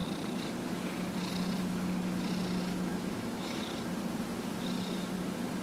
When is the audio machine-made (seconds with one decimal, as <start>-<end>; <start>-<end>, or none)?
2.9-3.6